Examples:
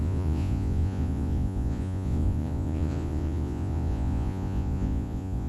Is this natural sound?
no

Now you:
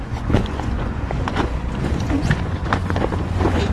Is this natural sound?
no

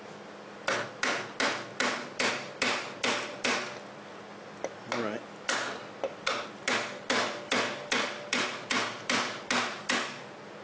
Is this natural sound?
yes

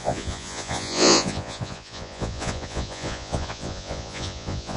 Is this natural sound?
no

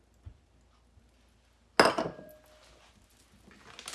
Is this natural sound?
yes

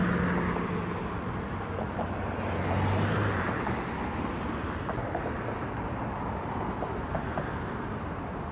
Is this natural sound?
yes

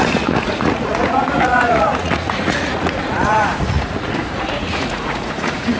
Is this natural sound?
no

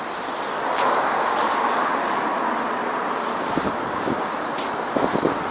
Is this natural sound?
yes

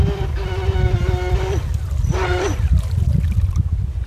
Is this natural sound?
yes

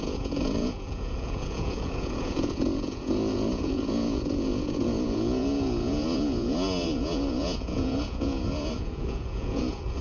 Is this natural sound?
no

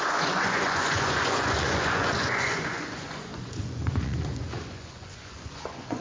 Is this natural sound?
no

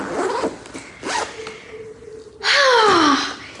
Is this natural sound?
yes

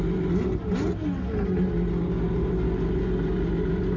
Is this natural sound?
yes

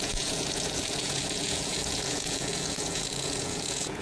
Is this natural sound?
no